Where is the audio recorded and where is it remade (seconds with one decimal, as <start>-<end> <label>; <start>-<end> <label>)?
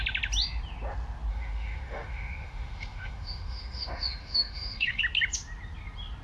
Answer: 0.0-1.3 recorded; 1.3-5.0 remade; 5.0-6.2 recorded